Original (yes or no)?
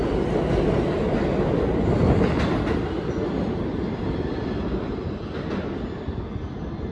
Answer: yes